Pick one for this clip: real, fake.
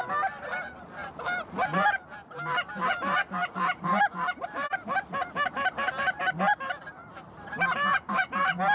fake